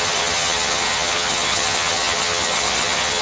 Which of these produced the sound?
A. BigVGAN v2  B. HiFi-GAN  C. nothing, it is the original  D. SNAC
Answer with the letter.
B